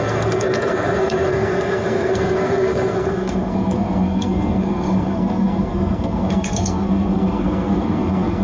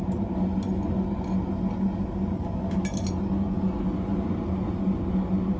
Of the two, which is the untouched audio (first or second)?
second